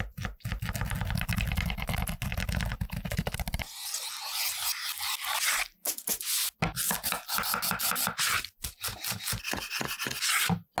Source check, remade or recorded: recorded